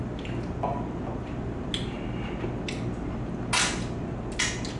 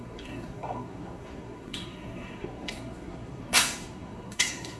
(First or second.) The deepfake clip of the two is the second